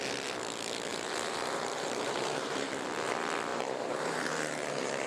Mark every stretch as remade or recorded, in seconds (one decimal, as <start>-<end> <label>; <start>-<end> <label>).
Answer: 0.0-0.9 recorded; 0.9-2.7 remade; 2.7-3.5 recorded; 3.5-5.1 remade